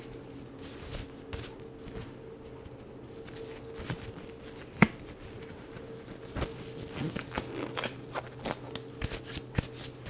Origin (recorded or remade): recorded